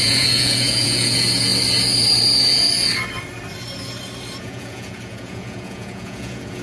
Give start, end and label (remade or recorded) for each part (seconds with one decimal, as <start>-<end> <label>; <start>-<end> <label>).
0.0-1.5 remade; 1.5-4.4 recorded; 4.4-6.6 remade